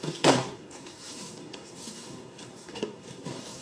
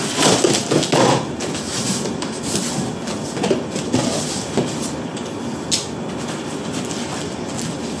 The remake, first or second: first